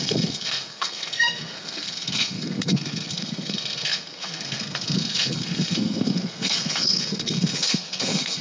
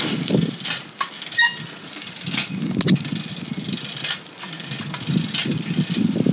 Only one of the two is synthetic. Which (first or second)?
first